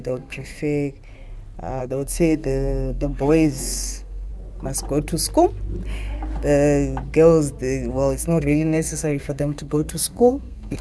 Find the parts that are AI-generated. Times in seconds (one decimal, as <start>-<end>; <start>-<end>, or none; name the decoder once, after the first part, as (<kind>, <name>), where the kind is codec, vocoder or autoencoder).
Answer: 0.0-0.6 (codec, SNAC); 1.8-4.3; 7.9-10.8